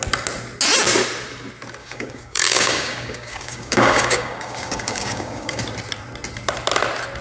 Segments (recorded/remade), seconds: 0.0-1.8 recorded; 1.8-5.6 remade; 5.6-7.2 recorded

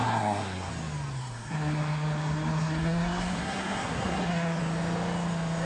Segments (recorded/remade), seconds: 0.0-0.7 remade; 0.7-1.2 recorded; 1.2-4.6 remade; 4.6-5.7 recorded